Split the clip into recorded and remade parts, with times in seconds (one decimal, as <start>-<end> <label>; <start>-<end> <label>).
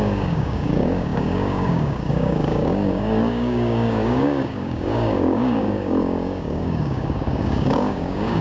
0.0-8.4 remade